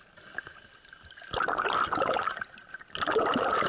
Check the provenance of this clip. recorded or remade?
recorded